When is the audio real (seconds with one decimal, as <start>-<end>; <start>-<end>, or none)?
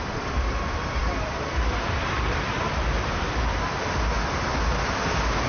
none